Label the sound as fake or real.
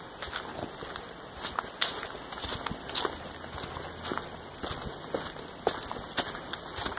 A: real